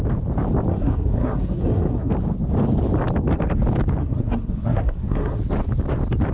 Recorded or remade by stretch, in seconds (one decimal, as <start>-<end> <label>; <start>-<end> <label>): 0.0-0.7 recorded; 0.7-2.1 remade; 2.1-4.0 recorded; 4.0-5.4 remade; 5.4-6.3 recorded